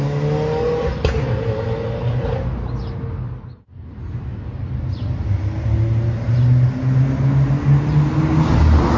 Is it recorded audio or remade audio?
recorded